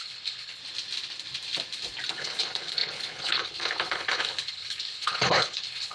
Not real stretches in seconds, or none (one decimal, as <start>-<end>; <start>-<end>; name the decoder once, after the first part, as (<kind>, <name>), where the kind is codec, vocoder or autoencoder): 0.0-0.6 (codec, HILCodec); 2.1-5.9